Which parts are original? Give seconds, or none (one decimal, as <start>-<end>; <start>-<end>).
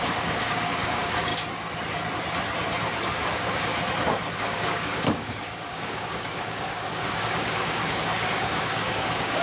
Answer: 1.3-3.1; 3.7-4.4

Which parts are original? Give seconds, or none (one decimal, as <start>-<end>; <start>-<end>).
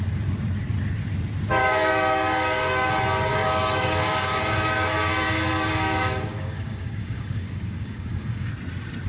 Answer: 0.0-1.6; 2.9-3.3; 8.5-9.1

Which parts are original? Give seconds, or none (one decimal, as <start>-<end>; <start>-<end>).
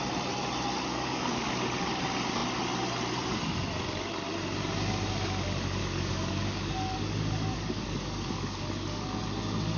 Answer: 0.0-0.9; 1.5-5.8; 9.2-9.8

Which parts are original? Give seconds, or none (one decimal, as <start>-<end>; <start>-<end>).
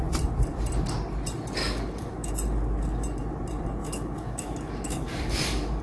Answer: 0.0-1.6; 2.3-3.8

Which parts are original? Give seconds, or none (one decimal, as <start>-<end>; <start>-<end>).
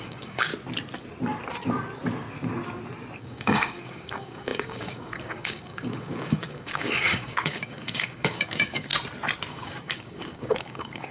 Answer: 0.5-3.2; 8.9-9.5